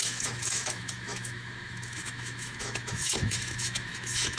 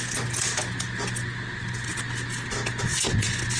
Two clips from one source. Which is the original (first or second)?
second